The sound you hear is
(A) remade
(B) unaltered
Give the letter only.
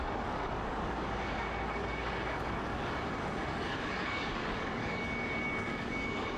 A